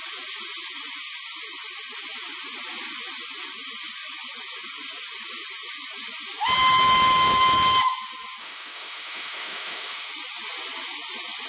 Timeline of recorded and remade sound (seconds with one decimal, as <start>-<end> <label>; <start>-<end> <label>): 0.0-8.4 recorded; 8.4-10.1 remade; 10.1-11.5 recorded